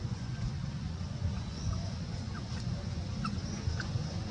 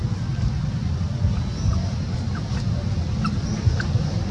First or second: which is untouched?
second